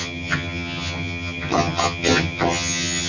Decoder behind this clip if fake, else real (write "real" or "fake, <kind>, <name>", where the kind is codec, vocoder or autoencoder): fake, vocoder, HiFi-GAN